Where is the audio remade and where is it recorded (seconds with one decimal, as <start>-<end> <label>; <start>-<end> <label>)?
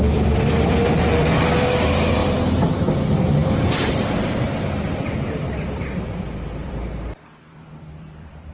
0.0-2.2 remade; 2.2-3.0 recorded; 3.0-8.5 remade